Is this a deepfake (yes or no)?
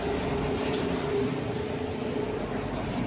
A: no